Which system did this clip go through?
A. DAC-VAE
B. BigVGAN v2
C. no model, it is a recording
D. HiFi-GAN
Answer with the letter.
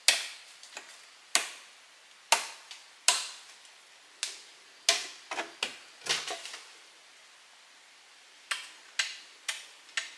C